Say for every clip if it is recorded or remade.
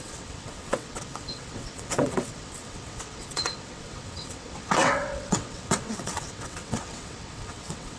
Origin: remade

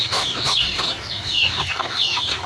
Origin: remade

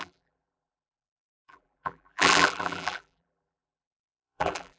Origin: remade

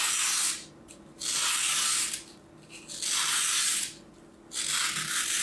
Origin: recorded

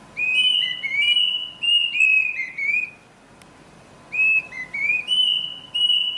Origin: recorded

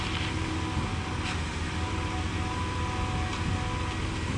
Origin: recorded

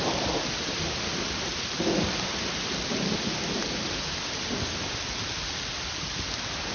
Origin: recorded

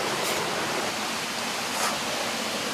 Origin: recorded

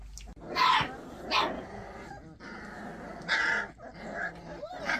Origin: recorded